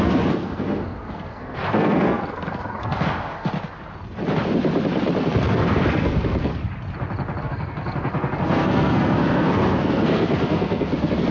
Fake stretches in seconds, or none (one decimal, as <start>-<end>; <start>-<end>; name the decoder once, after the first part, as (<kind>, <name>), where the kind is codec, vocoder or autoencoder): 0.0-3.5 (codec, SNAC); 5.2-6.5; 7.4-11.3